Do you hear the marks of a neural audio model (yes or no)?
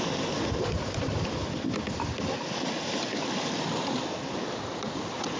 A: no